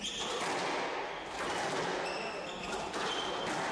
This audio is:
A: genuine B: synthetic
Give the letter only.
A